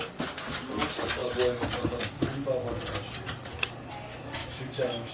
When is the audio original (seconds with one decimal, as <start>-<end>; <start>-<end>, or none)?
0.0-4.4